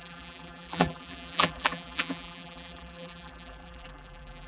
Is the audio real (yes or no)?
no